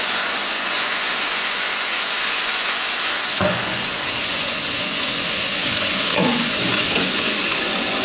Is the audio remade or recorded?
remade